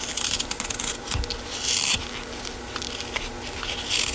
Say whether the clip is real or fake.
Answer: real